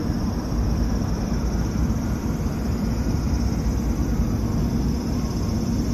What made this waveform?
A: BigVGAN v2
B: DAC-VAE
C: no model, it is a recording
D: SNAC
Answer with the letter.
A